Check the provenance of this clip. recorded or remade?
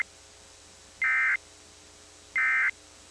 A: recorded